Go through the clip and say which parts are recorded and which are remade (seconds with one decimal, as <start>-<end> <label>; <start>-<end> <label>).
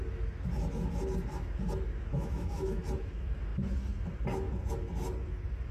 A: 0.0-2.1 recorded; 2.1-2.8 remade; 2.8-5.7 recorded